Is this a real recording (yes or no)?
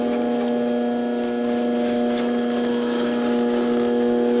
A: yes